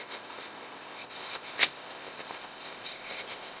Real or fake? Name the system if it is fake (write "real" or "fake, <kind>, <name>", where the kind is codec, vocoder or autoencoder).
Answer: fake, codec, ZipCodec